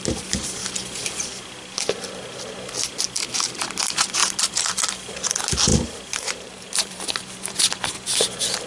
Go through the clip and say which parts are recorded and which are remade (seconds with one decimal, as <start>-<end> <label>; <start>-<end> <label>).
0.0-4.2 recorded; 4.2-5.1 remade; 5.1-5.7 recorded; 5.7-7.2 remade; 7.2-8.7 recorded